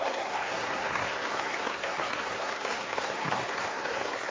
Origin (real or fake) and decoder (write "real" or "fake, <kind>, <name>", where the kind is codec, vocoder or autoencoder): fake, codec, SNAC